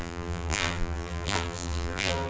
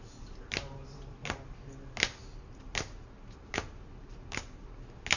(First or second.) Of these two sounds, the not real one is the first